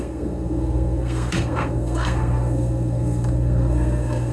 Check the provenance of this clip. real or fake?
fake